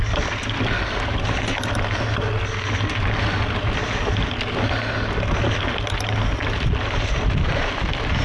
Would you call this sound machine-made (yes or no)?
no